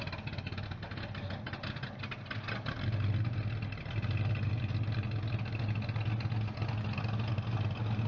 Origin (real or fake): real